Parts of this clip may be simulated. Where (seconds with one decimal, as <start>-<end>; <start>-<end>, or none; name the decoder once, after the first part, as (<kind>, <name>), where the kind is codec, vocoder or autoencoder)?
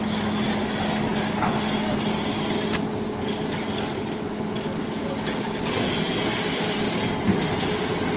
none